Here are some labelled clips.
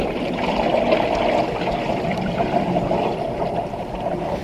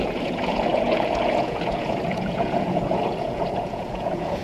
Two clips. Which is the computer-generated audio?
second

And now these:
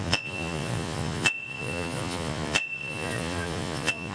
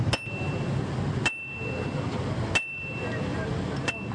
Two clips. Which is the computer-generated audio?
first